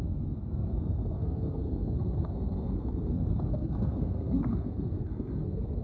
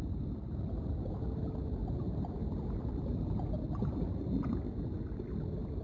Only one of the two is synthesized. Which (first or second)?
first